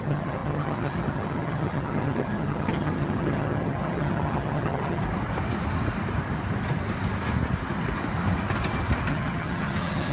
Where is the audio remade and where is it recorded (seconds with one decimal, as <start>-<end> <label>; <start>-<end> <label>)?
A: 0.0-5.0 remade; 5.0-9.1 recorded; 9.1-10.1 remade